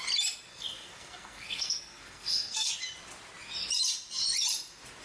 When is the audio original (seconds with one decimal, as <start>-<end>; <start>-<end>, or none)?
0.0-0.5; 2.7-5.0